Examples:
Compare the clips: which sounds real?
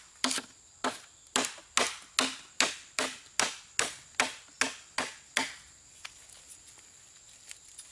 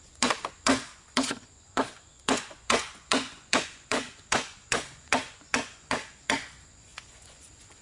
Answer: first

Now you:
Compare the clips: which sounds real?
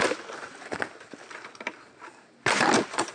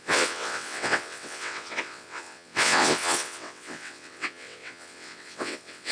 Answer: first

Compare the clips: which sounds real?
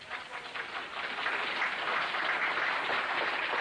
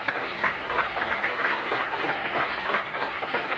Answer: first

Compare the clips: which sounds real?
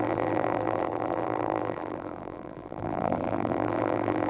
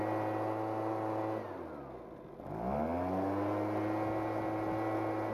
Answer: second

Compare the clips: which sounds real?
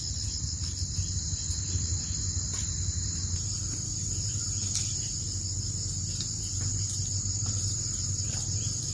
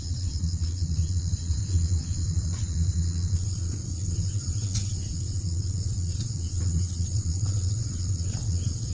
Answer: first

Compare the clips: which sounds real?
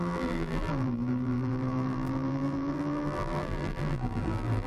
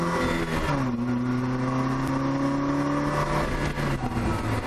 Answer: second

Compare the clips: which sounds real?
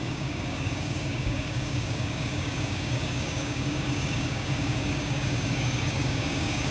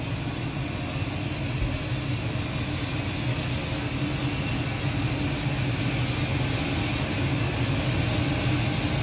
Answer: second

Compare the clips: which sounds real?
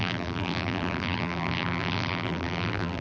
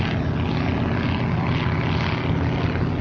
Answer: second